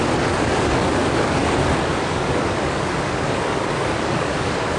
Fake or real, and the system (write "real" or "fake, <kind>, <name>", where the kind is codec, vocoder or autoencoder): fake, codec, DAC